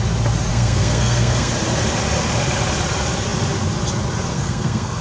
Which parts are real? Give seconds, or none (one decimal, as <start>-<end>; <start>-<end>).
0.0-0.5; 1.5-4.3